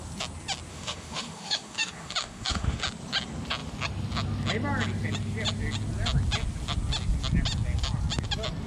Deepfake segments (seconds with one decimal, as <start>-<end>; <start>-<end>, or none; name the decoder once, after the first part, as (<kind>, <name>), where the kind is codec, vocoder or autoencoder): 0.7-2.8 (autoencoder, DAC-VAE)